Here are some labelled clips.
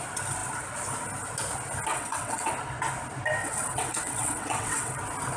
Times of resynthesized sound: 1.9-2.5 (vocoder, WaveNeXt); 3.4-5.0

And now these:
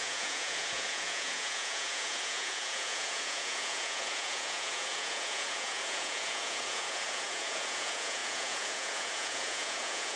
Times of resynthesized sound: 0.0-10.2 (vocoder, Vocos)

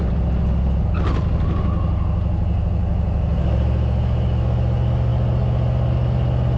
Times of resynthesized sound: none

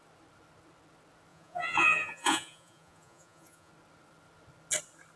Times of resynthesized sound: 1.3-3.7 (vocoder, Vocos)

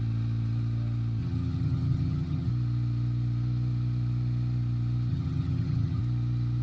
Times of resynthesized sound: 1.2-2.5 (vocoder, HiFi-GAN); 5.1-6.0

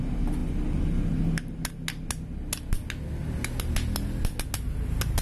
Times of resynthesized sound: none

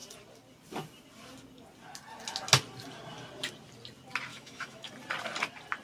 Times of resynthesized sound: 4.3-4.9 (autoencoder, DAC-VAE)

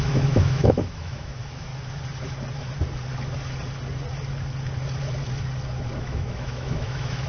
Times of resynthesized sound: 0.0-1.7 (autoencoder, DAC-VAE); 6.0-7.3